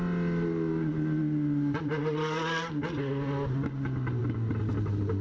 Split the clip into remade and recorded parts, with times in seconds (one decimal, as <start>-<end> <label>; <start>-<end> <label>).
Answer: 0.0-5.2 recorded